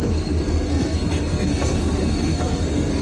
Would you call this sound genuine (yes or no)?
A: no